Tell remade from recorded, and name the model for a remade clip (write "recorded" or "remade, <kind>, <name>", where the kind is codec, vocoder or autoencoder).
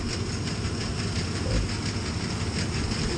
recorded